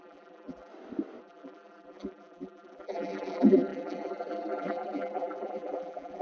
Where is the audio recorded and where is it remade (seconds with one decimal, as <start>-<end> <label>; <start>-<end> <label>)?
0.0-0.7 remade; 0.7-1.2 recorded; 1.2-6.2 remade